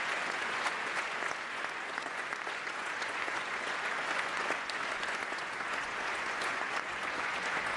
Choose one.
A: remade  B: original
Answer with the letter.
A